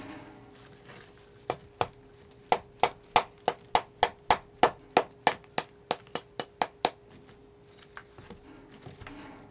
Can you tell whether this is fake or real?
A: real